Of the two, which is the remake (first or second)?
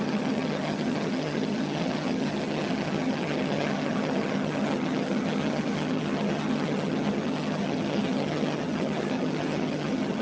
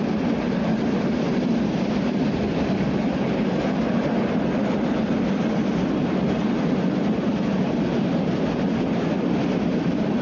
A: first